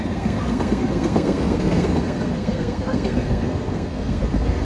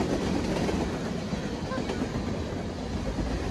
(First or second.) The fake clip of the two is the first